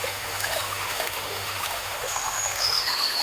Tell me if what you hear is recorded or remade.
remade